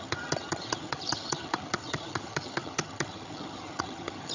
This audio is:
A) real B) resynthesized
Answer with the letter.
B